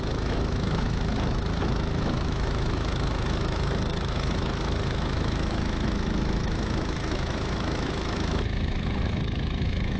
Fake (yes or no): yes